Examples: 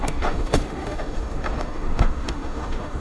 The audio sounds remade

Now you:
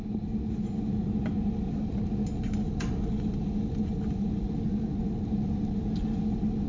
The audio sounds recorded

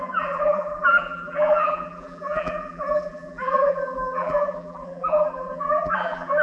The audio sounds remade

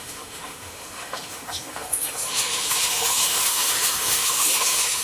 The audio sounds remade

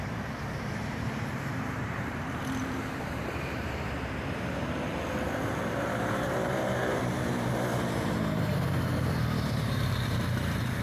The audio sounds remade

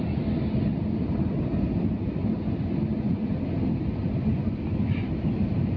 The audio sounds recorded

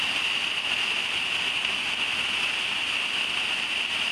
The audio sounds recorded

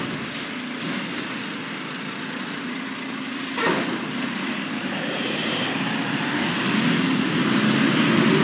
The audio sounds recorded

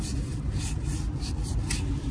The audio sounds recorded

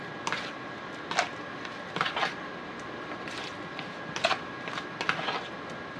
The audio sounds recorded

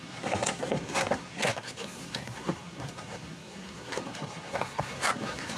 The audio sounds remade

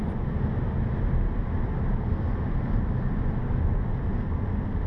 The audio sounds recorded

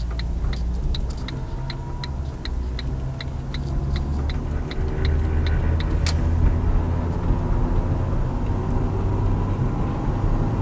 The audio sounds recorded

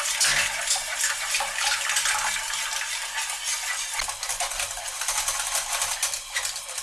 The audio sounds recorded